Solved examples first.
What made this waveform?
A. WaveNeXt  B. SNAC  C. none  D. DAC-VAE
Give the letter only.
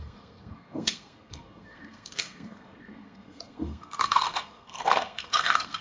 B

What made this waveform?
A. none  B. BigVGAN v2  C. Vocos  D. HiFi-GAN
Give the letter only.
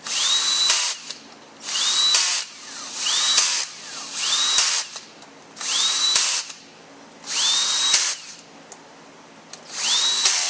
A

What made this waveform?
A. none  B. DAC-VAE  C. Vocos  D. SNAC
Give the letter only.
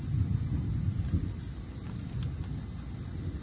A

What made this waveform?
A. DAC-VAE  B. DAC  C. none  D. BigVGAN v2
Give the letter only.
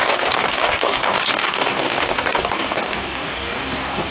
B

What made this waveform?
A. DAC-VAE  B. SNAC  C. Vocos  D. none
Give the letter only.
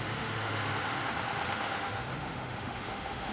A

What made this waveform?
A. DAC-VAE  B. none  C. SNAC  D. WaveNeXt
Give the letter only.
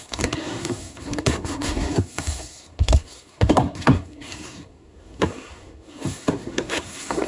C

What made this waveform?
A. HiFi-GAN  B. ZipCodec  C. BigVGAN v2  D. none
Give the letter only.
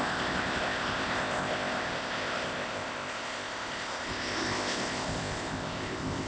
B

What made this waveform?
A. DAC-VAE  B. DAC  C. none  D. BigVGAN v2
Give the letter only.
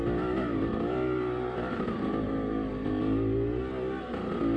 C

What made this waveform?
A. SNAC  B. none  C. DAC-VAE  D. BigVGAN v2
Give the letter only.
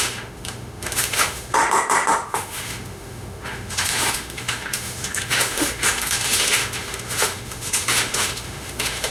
C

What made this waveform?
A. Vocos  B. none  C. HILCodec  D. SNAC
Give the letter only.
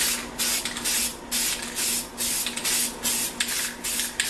B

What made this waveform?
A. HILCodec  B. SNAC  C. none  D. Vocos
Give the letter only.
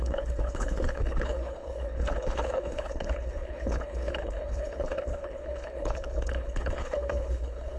A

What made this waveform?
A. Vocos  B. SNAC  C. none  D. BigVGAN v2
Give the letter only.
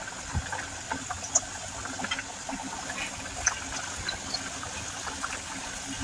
C